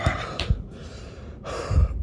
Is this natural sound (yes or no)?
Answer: no